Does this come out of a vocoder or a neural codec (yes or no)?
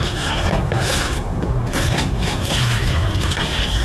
yes